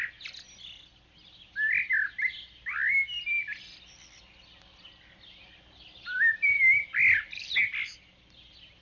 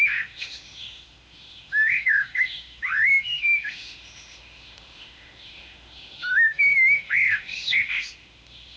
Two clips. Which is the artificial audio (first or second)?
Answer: second